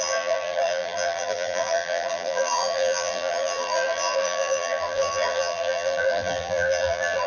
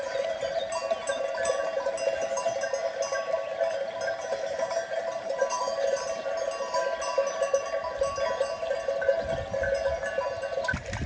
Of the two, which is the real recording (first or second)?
second